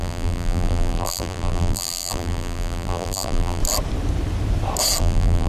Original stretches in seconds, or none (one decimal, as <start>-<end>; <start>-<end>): 3.6-5.0